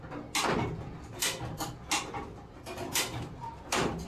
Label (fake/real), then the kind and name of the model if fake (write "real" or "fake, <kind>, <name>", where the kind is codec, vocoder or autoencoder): real